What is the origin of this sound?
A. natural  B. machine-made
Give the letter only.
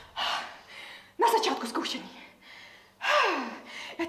A